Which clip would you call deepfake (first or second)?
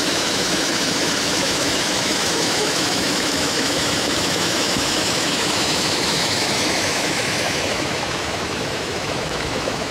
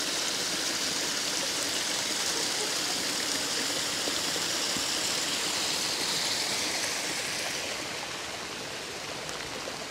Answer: first